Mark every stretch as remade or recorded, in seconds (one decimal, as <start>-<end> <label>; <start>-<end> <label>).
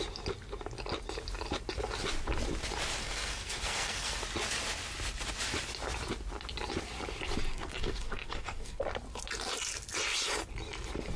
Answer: 0.0-3.0 recorded; 3.0-4.2 remade; 4.2-7.5 recorded; 7.5-8.8 remade; 8.8-11.2 recorded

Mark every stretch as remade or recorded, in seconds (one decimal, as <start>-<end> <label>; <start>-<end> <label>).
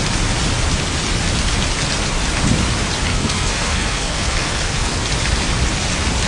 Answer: 0.0-3.1 recorded; 3.1-5.0 remade; 5.0-6.3 recorded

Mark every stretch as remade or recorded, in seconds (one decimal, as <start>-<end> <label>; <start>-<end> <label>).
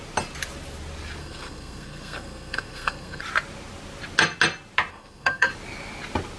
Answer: 0.0-1.2 recorded; 1.2-3.2 remade; 3.2-4.9 recorded; 4.9-5.5 remade; 5.5-6.4 recorded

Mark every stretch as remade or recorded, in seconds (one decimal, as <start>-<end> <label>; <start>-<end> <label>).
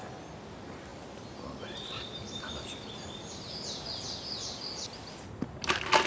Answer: 0.0-6.1 recorded